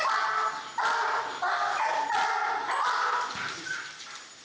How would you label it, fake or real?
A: real